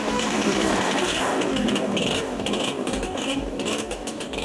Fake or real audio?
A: fake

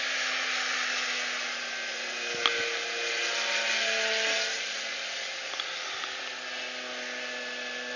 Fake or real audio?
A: real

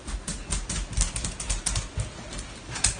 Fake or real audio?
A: real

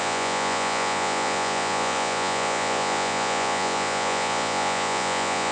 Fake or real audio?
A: fake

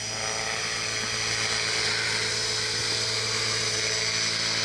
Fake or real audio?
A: real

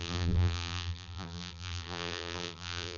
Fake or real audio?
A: fake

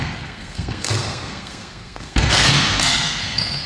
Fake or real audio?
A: fake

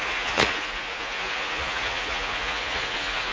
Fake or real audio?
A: fake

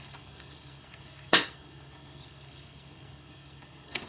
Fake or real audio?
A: fake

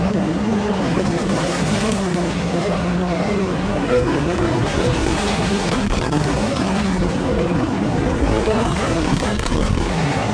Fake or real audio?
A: fake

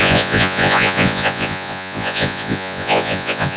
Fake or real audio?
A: fake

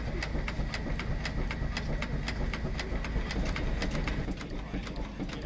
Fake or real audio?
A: real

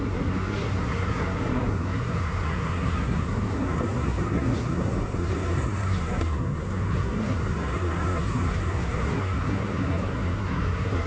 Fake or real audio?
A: fake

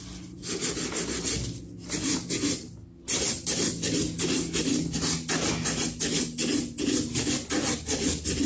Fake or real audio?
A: real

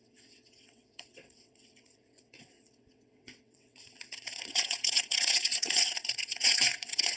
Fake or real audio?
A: fake